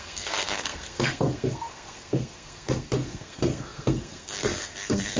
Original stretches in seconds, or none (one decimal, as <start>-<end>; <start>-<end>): none